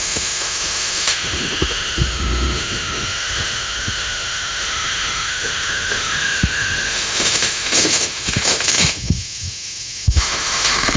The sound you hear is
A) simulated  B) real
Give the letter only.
A